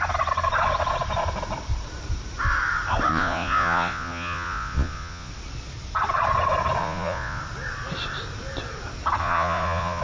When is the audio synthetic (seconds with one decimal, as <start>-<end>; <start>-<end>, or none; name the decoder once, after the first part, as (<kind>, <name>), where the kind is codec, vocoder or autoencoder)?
3.1-5.3 (vocoder, Vocos); 6.8-7.4; 9.2-10.0